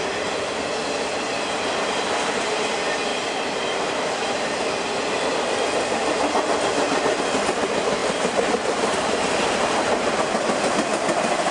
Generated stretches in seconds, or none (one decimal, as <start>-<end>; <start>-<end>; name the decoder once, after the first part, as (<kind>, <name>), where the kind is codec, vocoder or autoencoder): 3.1-4.7 (vocoder, BigVGAN v2); 8.0-10.1